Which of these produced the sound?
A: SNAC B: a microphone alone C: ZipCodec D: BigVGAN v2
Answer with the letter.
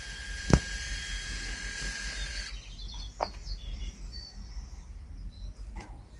B